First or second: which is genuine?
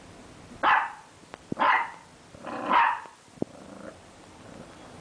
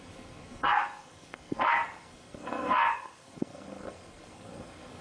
first